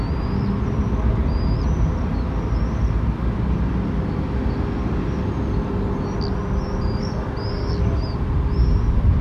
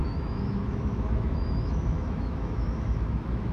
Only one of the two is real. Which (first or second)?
first